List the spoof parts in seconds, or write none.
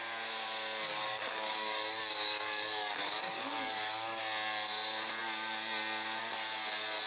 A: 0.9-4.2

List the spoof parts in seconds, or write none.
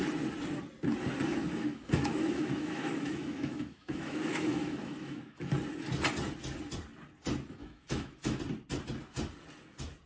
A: 1.3-5.5; 7.6-8.4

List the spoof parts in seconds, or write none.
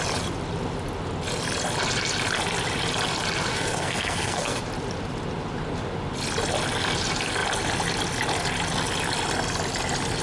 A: 3.5-4.6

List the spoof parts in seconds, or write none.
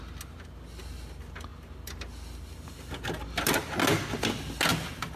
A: none